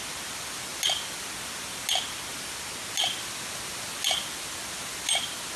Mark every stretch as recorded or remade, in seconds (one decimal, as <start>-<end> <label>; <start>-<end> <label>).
0.0-5.6 recorded